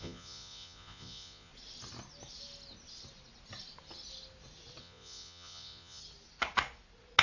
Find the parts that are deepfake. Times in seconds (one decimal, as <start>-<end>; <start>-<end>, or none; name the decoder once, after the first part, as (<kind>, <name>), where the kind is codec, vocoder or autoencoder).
0.0-1.5 (vocoder, Vocos); 4.8-6.0